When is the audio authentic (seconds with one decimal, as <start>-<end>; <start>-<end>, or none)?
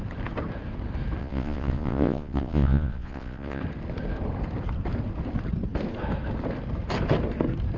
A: 0.0-1.2; 3.6-7.8